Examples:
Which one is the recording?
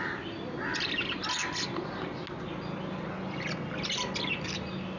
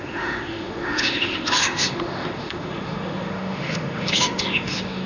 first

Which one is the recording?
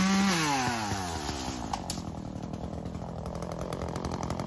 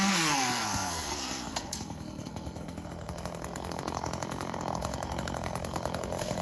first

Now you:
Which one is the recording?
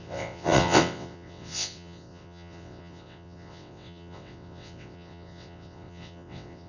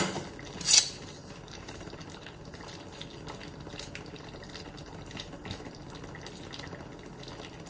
second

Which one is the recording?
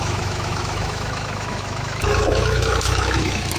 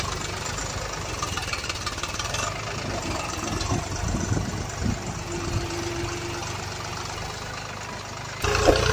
second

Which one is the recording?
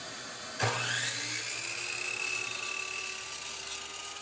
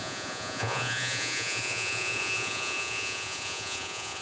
first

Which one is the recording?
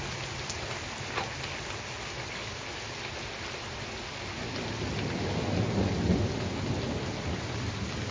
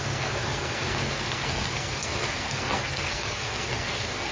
first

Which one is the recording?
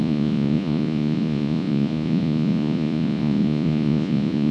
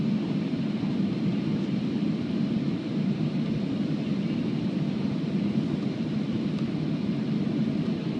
second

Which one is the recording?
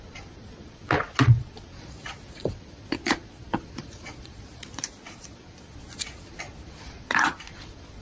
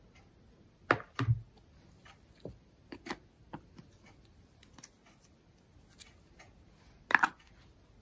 second